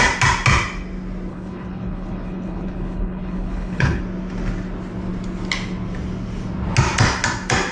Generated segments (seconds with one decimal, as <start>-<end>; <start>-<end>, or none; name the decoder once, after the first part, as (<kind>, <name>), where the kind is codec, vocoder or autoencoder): 1.3-4.0 (codec, HILCodec)